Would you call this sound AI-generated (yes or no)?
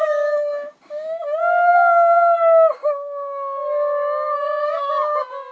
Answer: yes